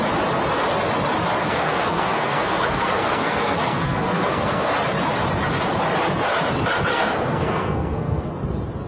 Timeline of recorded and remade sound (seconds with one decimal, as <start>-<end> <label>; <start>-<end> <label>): 0.0-1.4 recorded; 1.4-4.7 remade; 4.7-6.9 recorded; 6.9-8.3 remade; 8.3-8.9 recorded